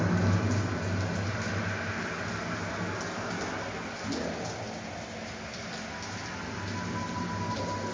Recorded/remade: recorded